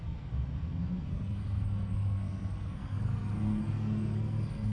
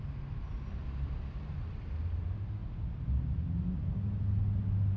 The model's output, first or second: first